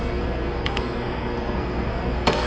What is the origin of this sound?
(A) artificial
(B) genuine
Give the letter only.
A